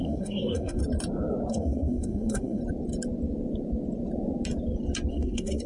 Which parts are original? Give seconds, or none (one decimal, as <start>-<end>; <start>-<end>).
0.8-1.5; 2.6-5.1